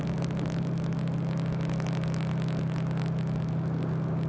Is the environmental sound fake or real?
real